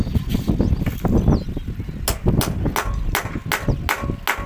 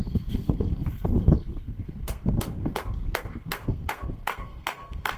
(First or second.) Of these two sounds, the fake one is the second